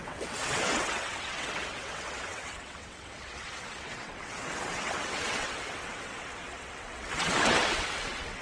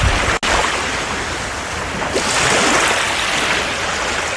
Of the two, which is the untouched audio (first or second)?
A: second